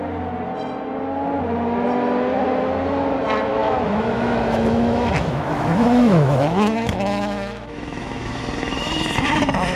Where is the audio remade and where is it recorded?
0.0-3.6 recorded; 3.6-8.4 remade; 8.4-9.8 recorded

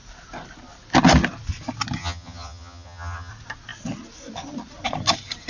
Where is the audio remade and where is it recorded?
0.0-2.0 recorded; 2.0-3.3 remade; 3.3-5.5 recorded